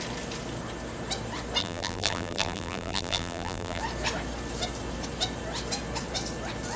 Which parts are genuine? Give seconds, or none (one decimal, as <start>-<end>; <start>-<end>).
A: 0.0-1.6; 3.8-6.8